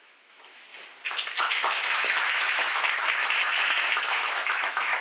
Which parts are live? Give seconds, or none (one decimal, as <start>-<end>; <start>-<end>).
0.7-1.4